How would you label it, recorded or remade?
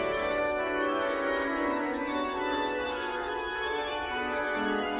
remade